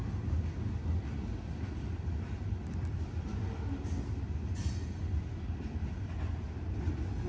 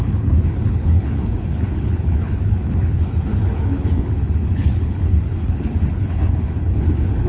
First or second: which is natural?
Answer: first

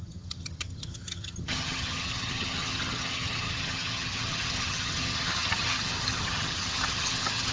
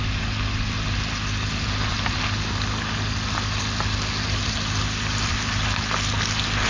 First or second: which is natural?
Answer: second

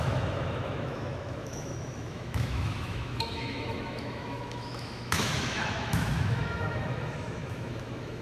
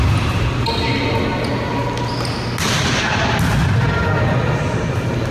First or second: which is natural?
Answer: second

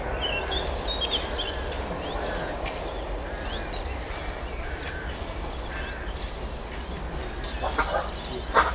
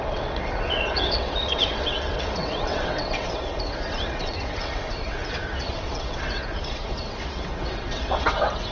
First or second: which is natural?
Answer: first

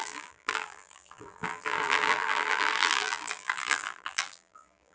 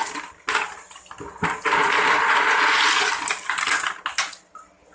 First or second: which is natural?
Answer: second